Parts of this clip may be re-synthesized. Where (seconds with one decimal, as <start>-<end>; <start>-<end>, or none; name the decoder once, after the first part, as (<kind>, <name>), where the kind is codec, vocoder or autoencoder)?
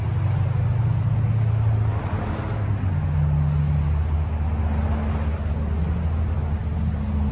none